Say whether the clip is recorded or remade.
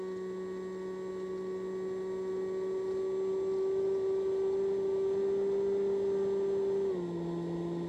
recorded